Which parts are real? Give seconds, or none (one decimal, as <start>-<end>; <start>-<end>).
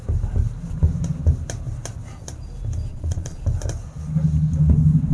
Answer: 0.0-2.9; 3.4-5.1